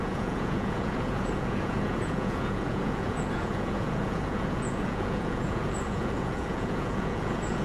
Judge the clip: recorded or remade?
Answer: remade